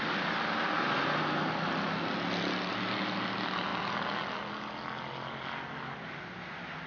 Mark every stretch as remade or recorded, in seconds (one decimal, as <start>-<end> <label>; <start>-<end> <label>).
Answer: 0.0-6.9 recorded